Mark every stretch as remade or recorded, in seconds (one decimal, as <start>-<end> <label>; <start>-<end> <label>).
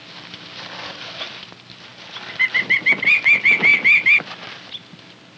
0.0-5.4 recorded